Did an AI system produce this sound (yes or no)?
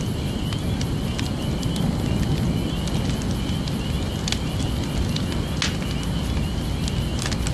no